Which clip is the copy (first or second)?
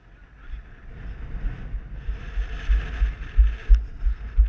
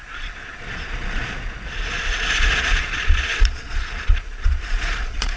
second